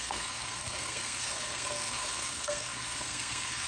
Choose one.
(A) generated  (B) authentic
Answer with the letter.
A